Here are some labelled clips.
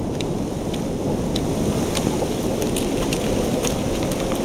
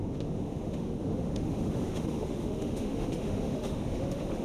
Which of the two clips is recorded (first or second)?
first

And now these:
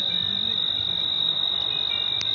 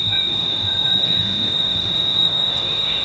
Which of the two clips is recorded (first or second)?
first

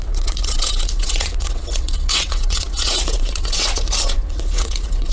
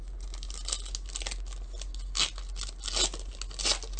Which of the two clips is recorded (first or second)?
second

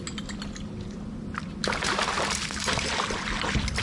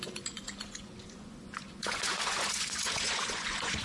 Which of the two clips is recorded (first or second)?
first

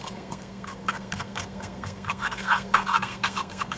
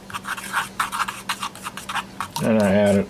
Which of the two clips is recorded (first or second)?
second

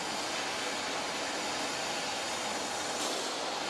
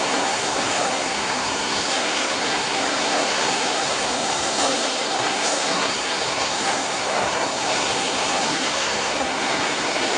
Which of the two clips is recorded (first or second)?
first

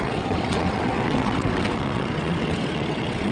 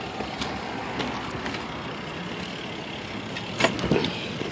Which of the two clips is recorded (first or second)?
second